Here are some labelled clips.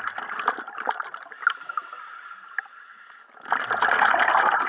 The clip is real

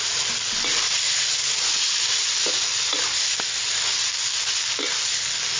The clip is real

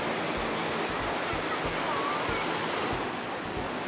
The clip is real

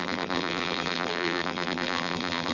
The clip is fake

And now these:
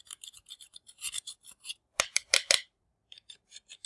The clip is fake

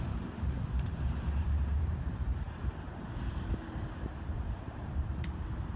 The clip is fake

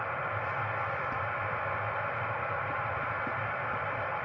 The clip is fake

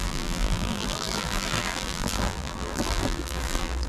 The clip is fake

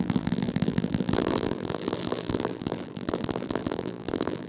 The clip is fake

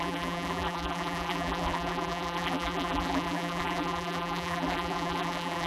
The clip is fake